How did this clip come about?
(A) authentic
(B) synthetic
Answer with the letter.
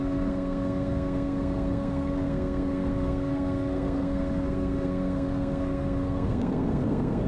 B